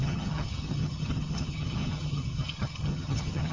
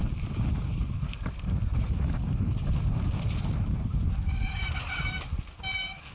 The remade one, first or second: first